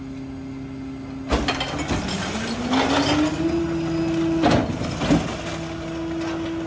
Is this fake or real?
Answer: real